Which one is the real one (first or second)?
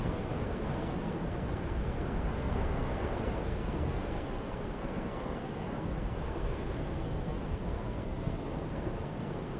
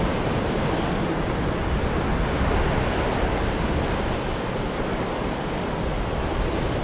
second